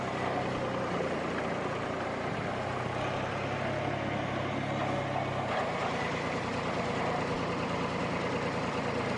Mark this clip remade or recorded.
recorded